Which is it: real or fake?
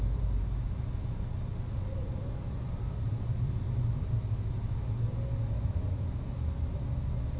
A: real